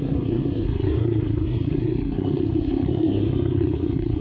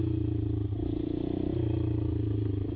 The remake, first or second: first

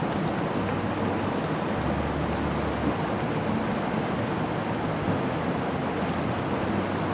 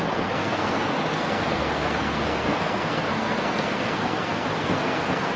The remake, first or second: second